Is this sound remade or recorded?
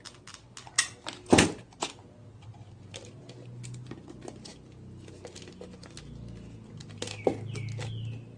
recorded